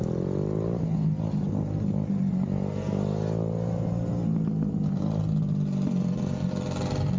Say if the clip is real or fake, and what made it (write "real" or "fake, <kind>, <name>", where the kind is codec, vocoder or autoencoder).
real